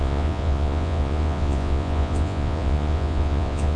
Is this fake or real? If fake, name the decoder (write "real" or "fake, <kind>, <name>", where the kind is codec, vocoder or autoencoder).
fake, vocoder, Vocos